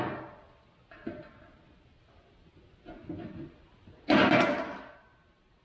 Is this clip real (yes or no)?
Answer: yes